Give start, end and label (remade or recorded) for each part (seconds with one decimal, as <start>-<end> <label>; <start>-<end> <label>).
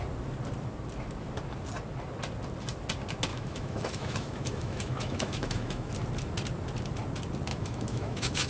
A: 0.0-3.3 recorded; 3.3-5.9 remade; 5.9-7.5 recorded; 7.5-8.5 remade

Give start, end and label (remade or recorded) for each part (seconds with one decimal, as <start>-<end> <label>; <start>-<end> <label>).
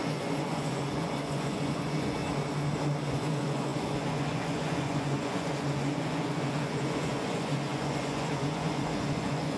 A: 0.0-2.2 remade; 2.2-3.1 recorded; 3.1-9.6 remade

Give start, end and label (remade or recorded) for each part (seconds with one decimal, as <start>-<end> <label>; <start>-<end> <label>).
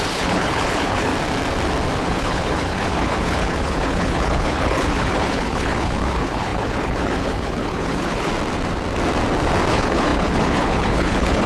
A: 0.0-1.1 remade; 1.1-2.0 recorded; 2.0-8.3 remade; 8.3-9.7 recorded; 9.7-11.5 remade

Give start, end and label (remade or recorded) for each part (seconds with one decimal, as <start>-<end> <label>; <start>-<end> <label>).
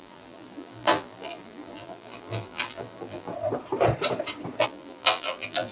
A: 0.0-3.3 remade; 3.3-4.6 recorded; 4.6-5.7 remade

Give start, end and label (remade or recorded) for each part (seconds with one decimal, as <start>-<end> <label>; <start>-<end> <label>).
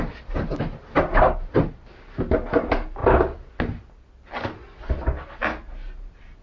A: 0.0-6.4 recorded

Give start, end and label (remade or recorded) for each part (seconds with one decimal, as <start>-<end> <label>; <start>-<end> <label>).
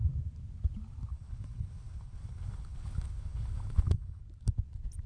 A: 0.0-1.1 recorded; 1.1-4.2 remade; 4.2-5.1 recorded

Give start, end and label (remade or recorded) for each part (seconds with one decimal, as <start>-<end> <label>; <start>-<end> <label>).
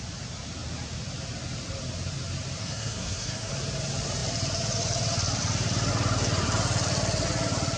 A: 0.0-2.6 recorded; 2.6-3.5 remade; 3.5-7.8 recorded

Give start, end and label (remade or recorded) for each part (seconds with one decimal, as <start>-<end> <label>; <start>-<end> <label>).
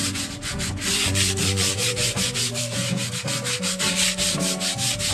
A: 0.0-3.1 remade; 3.1-5.1 recorded